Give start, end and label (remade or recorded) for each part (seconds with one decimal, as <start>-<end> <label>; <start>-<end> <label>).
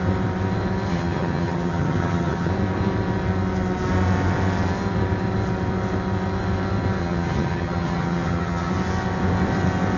0.0-0.9 recorded; 0.9-2.5 remade; 2.5-7.0 recorded; 7.0-8.7 remade; 8.7-10.0 recorded